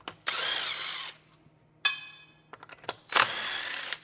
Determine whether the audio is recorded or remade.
recorded